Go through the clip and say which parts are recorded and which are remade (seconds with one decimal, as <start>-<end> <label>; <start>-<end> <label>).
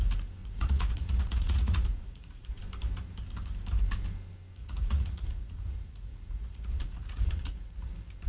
0.0-0.4 recorded; 0.4-2.6 remade; 2.6-4.6 recorded; 4.6-7.7 remade; 7.7-8.3 recorded